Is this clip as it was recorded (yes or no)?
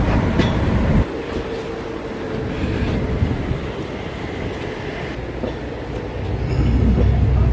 yes